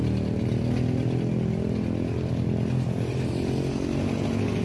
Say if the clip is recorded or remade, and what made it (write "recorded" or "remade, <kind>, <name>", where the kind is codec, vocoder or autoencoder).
recorded